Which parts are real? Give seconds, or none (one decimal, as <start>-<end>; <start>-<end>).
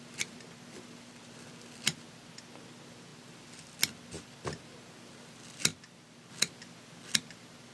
none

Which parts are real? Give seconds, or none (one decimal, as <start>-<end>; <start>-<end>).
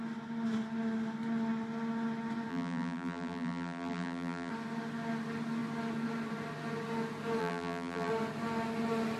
0.0-2.5; 4.5-7.4; 8.1-9.2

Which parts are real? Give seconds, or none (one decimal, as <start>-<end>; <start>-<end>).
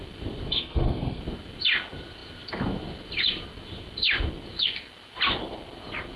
0.0-0.5; 1.2-6.2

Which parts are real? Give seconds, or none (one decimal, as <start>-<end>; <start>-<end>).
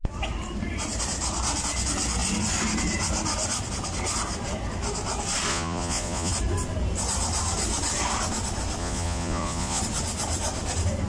0.0-5.5; 6.3-8.8; 9.8-11.1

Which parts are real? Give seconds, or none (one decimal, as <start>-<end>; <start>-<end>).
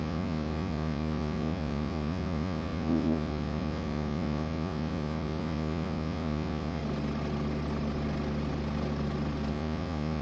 6.8-9.5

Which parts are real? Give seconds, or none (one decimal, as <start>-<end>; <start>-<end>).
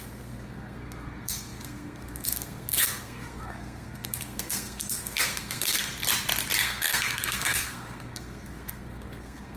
5.9-6.6